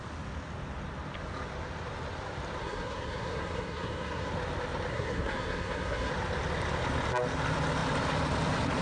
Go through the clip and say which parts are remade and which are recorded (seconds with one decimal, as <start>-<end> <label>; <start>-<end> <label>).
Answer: 0.0-2.6 recorded; 2.6-4.3 remade; 4.3-4.9 recorded; 4.9-6.1 remade; 6.1-8.8 recorded